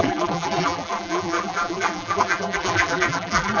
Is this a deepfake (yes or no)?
yes